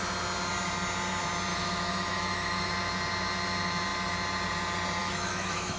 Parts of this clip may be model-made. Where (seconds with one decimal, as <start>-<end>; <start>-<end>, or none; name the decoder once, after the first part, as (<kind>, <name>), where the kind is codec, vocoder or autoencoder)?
1.5-2.7 (autoencoder, DAC-VAE); 5.0-5.8